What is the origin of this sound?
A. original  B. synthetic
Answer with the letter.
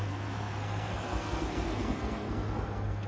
B